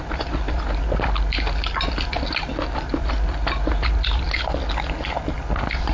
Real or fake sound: real